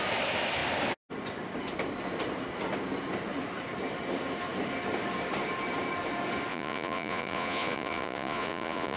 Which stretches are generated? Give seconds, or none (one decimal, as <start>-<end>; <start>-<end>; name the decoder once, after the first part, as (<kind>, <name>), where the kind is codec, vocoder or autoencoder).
6.5-9.0 (vocoder, Vocos)